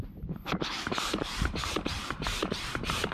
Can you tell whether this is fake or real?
fake